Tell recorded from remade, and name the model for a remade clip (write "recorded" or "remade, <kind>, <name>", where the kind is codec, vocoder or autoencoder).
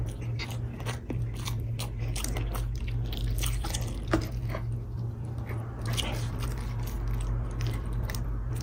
recorded